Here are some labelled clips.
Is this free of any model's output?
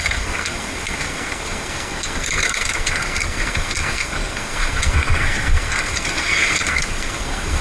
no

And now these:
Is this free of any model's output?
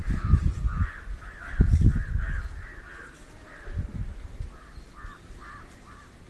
yes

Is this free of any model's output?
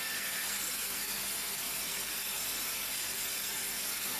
no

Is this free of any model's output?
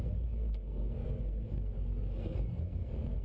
no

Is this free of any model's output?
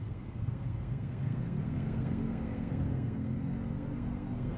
no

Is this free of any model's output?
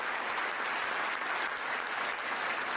yes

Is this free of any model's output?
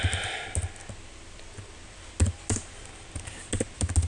yes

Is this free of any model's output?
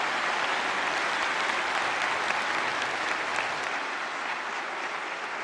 yes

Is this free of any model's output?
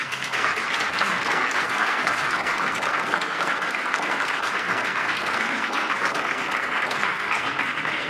no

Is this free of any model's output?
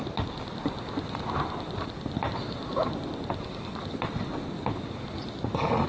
yes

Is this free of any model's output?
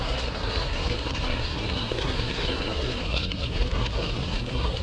no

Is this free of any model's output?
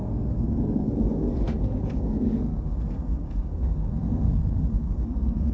no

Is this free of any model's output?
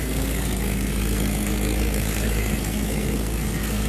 no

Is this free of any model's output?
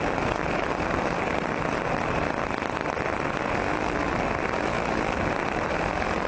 yes